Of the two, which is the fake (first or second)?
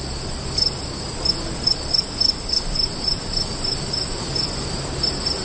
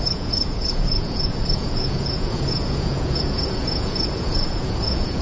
second